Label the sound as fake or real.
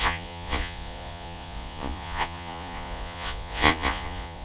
fake